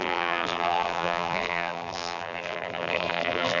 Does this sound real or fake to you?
fake